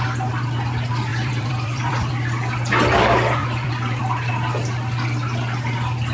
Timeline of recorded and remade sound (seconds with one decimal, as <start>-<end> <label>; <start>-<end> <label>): 0.0-1.1 recorded; 1.1-2.1 remade; 2.1-3.4 recorded; 3.4-4.0 remade; 4.0-6.1 recorded